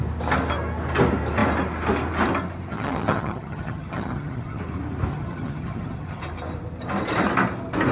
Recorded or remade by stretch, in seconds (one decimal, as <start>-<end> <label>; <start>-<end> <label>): 0.0-2.7 recorded; 2.7-4.6 remade; 4.6-5.1 recorded; 5.1-6.2 remade; 6.2-7.9 recorded